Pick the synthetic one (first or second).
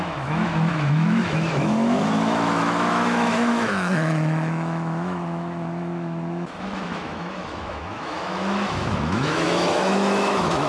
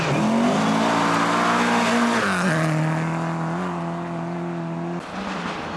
first